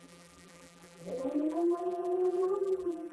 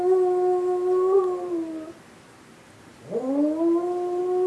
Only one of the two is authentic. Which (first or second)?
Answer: second